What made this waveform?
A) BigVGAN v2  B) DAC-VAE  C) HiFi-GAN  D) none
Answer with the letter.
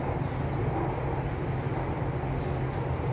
D